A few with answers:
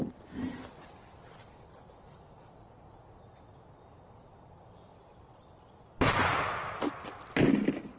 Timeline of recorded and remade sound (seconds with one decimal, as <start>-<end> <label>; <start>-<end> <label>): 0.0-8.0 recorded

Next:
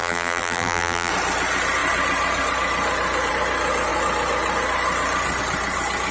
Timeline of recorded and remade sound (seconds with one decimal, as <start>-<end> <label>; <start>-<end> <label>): 0.0-1.1 remade; 1.1-6.1 recorded

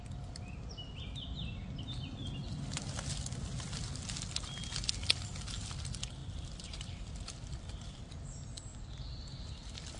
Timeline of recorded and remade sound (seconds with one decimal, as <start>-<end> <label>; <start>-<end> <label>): 0.0-6.2 recorded; 6.2-8.1 remade; 8.1-8.7 recorded; 8.7-10.0 remade